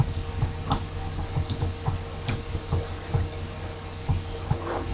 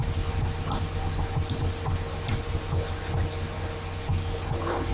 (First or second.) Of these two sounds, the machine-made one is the first